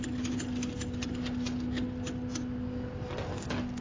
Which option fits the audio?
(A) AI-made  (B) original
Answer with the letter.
B